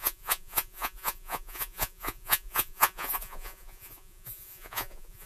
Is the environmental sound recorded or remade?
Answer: remade